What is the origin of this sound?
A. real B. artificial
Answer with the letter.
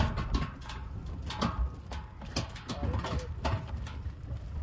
A